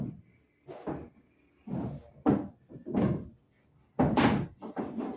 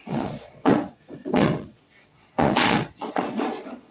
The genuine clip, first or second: first